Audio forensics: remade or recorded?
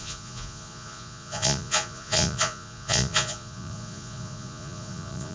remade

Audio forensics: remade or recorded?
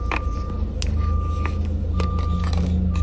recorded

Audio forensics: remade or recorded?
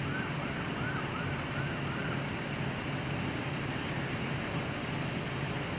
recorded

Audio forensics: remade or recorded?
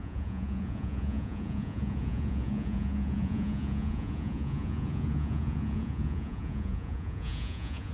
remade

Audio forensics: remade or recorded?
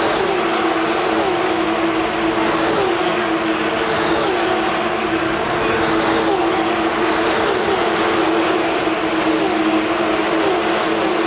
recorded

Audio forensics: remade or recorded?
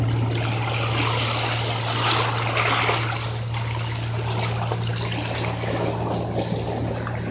recorded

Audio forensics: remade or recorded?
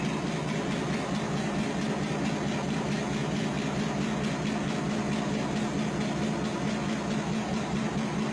recorded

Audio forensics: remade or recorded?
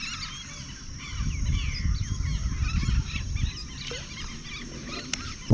recorded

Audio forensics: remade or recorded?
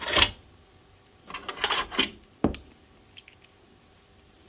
recorded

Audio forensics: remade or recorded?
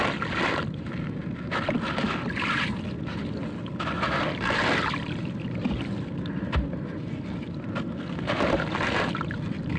recorded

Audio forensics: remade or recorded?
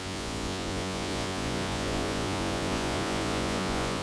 remade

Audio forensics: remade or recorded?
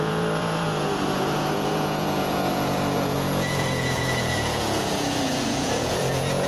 remade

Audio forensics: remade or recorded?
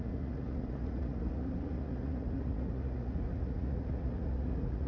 remade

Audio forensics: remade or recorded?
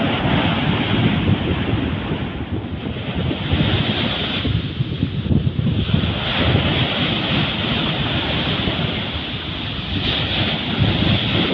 recorded